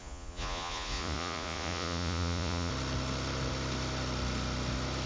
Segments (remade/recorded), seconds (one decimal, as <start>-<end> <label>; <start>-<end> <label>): 0.0-2.7 remade; 2.7-5.1 recorded